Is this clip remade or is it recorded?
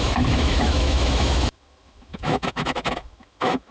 remade